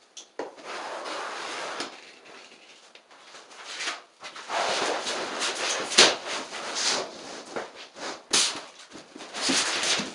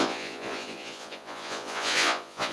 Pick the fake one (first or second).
second